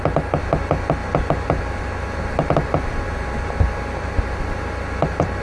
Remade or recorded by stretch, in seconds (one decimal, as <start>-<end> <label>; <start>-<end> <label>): 0.0-5.4 recorded